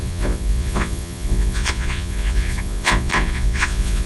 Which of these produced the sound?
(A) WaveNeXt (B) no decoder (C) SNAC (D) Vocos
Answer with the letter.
D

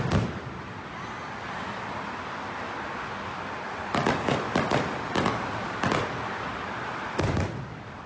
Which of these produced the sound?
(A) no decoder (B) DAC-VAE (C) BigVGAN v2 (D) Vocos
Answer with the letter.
A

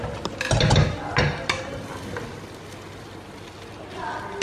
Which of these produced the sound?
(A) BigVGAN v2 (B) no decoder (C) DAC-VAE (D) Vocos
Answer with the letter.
B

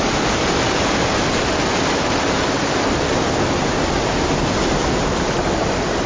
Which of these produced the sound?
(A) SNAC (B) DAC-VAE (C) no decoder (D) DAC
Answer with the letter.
C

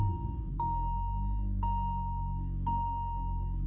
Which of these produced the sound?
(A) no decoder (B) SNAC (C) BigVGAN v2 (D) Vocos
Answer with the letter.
B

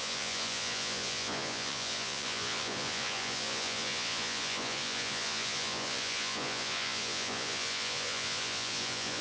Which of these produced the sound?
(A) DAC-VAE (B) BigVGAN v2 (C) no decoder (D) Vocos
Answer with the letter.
D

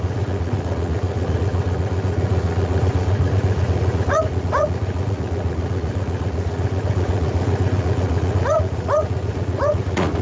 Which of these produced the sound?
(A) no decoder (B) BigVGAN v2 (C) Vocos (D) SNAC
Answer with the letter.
C